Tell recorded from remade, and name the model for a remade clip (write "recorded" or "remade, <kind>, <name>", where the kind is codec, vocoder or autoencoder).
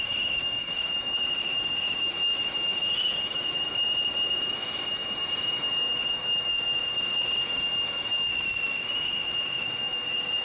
remade, autoencoder, DAC-VAE